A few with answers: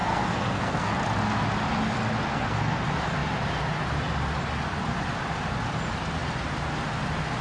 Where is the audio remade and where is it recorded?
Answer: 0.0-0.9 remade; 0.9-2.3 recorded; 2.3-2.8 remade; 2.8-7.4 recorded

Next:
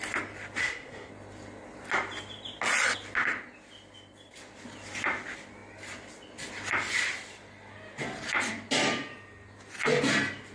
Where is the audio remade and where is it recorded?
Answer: 0.0-0.6 recorded; 0.6-1.1 remade; 1.1-10.5 recorded

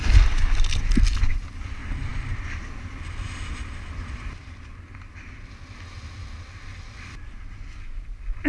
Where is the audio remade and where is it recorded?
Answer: 0.0-8.5 recorded